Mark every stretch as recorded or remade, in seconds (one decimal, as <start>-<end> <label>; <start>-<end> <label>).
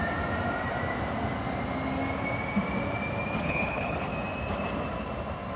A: 0.0-3.4 recorded; 3.4-4.1 remade; 4.1-5.6 recorded